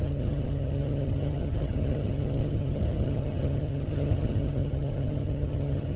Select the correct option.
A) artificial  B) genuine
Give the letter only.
A